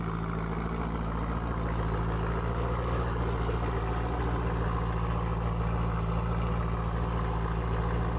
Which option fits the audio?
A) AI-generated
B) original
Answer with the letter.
B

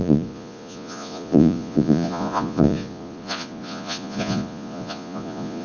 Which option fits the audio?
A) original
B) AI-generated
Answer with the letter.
B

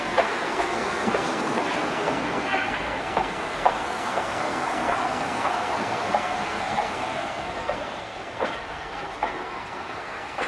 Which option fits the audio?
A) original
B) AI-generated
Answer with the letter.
B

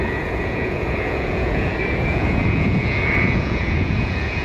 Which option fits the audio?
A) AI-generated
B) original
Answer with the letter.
A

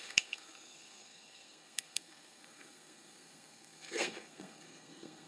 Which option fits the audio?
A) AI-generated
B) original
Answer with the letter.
A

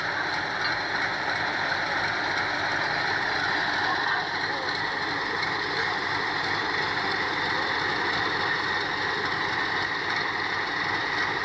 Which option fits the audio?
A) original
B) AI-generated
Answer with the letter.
A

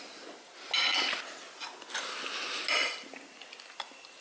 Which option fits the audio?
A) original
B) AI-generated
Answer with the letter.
A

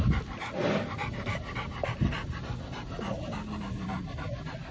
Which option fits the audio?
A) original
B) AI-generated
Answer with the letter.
A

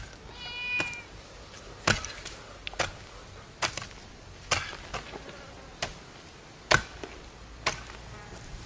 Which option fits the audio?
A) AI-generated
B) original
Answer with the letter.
B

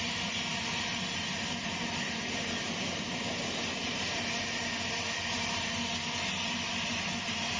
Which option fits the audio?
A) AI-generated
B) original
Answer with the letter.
B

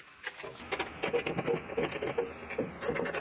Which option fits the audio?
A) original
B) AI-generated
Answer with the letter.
A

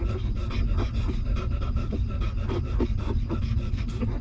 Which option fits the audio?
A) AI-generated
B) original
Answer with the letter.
B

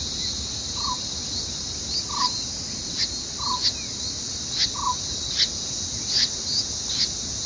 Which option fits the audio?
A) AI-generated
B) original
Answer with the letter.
B